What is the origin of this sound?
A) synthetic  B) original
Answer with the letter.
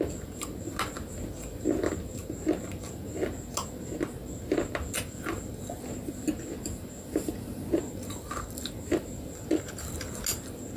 B